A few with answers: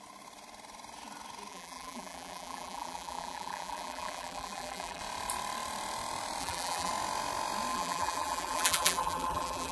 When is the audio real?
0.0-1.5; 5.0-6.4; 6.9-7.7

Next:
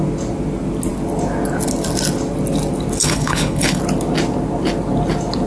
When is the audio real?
0.0-3.0; 3.8-5.5

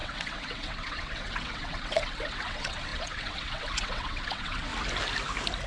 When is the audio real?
4.7-5.7

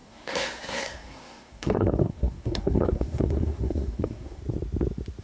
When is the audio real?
4.4-5.2

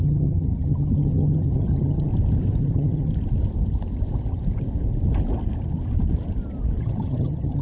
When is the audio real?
2.1-2.6; 3.1-6.8

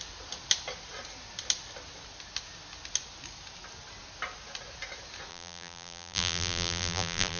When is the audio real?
0.0-5.3

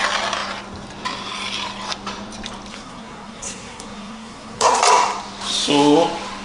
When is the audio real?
0.0-2.7; 4.8-6.4